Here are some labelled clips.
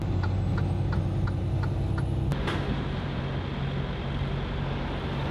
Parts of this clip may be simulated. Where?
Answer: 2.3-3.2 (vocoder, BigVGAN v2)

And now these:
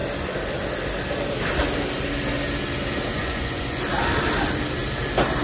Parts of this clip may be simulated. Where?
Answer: 3.1-3.8 (vocoder, Vocos)